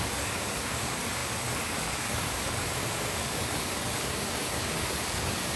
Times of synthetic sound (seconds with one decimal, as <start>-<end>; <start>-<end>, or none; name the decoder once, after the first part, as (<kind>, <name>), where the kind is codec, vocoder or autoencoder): 0.0-5.6 (codec, DAC)